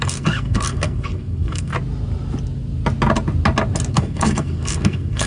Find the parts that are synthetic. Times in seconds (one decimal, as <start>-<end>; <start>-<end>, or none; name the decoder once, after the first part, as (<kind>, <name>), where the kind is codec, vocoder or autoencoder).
0.0-1.7 (codec, SNAC); 3.9-5.3